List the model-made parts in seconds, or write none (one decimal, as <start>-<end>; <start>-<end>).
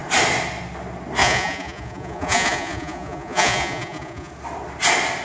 1.2-4.3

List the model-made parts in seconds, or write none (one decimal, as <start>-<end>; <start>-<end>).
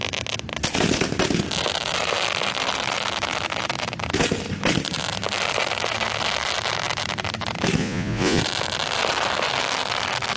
7.8-8.4